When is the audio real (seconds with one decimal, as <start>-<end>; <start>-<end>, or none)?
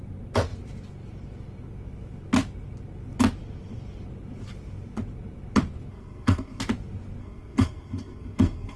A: 0.0-5.9; 6.6-7.2